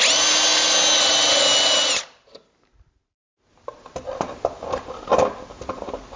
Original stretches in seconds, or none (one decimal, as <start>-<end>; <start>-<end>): 0.0-6.2